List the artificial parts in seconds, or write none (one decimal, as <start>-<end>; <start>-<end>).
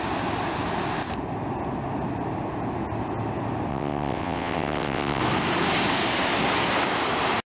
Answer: 3.7-5.2